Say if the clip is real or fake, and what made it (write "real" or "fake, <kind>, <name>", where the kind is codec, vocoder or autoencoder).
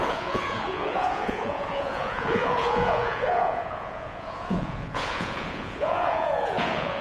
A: fake, vocoder, Vocos